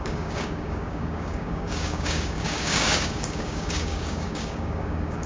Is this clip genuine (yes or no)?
no